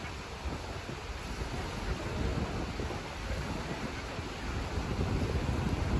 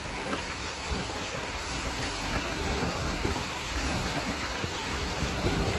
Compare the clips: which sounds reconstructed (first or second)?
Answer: second